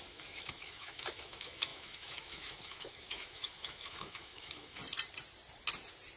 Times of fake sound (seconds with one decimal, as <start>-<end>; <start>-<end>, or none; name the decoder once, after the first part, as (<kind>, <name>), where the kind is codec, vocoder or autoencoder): 0.0-4.8 (autoencoder, DAC-VAE)